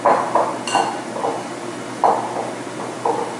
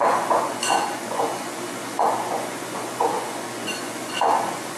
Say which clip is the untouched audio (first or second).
first